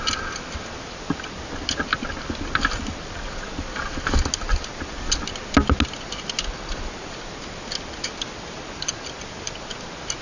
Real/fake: real